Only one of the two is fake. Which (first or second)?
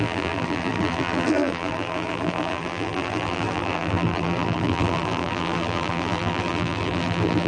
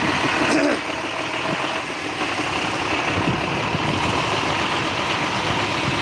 first